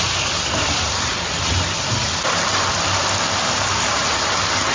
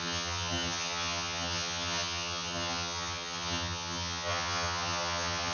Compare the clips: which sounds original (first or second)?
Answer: first